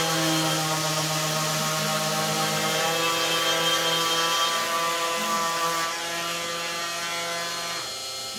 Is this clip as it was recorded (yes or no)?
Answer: yes